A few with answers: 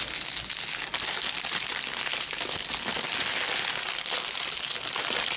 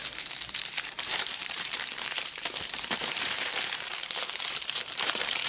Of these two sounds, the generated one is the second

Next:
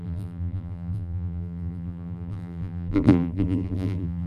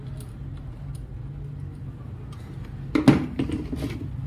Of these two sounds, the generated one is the first